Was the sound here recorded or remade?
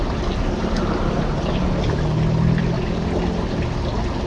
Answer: recorded